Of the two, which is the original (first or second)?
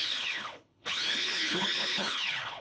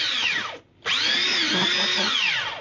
second